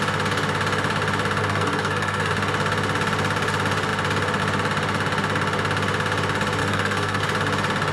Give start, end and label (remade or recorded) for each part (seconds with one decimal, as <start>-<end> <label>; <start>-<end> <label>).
0.0-1.4 recorded; 1.4-2.3 remade; 2.3-6.6 recorded; 6.6-7.2 remade; 7.2-7.9 recorded